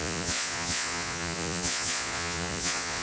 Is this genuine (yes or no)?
no